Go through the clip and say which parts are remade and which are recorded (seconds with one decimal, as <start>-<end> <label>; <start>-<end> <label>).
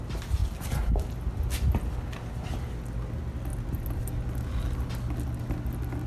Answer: 0.0-6.1 recorded